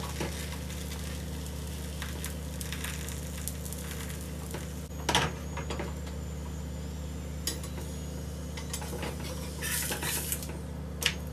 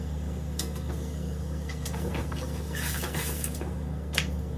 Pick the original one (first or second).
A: first